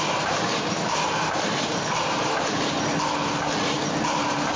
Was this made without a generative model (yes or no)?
no